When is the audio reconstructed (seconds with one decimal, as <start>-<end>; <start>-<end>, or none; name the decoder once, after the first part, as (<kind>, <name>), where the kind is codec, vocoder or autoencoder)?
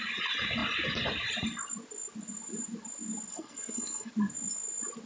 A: 3.3-4.1 (codec, SNAC)